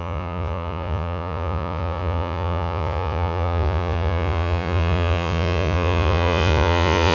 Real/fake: fake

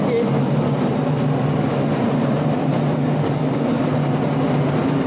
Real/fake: real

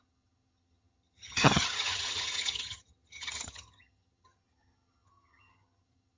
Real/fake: fake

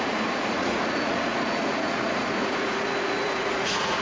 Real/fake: fake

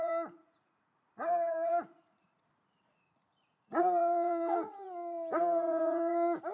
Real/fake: fake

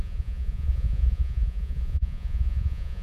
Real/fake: fake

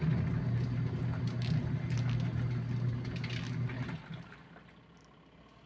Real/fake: real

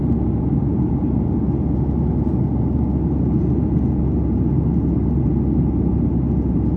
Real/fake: real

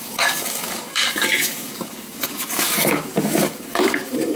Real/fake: fake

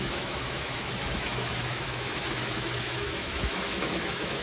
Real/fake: fake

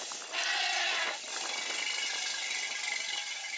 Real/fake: real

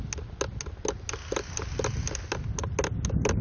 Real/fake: real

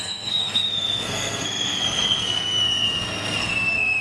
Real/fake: fake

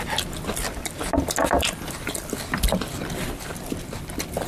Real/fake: fake